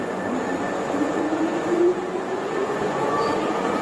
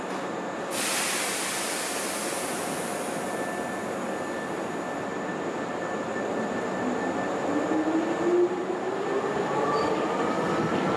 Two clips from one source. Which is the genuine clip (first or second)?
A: second